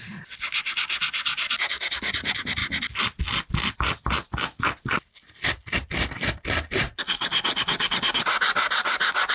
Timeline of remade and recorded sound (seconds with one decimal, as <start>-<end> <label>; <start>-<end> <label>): 0.0-9.3 recorded